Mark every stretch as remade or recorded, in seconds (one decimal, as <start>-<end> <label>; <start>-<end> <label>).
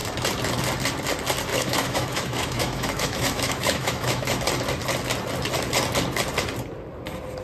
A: 0.0-1.5 recorded; 1.5-4.4 remade; 4.4-7.4 recorded